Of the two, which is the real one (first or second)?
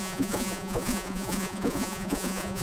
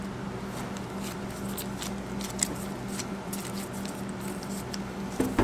second